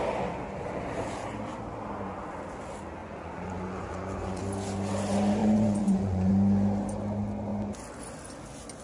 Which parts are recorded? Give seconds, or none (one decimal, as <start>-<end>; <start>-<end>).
0.0-3.0; 4.4-5.4; 6.3-8.8